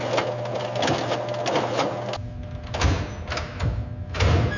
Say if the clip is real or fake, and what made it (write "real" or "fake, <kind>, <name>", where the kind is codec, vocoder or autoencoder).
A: real